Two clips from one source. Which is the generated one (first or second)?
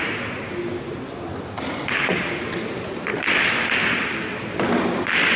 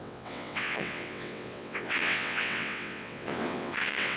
second